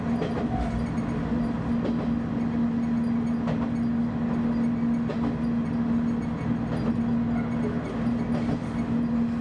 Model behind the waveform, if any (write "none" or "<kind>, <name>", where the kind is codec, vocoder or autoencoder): none